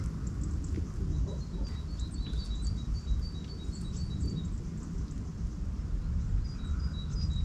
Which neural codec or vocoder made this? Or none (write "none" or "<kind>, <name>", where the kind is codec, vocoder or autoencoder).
none